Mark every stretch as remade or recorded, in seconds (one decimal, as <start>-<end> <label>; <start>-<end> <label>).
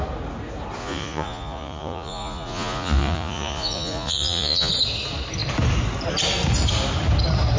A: 0.0-0.8 recorded; 0.8-4.7 remade; 4.7-7.6 recorded